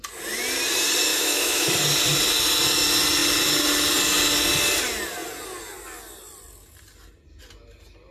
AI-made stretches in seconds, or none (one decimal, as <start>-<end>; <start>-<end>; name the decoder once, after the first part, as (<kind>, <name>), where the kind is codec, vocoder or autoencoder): 1.1-1.7 (autoencoder, DAC-VAE)